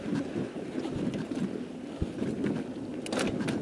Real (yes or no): yes